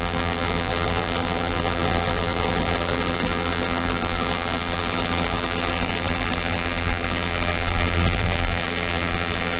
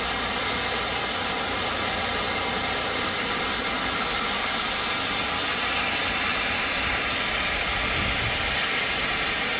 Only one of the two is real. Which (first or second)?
second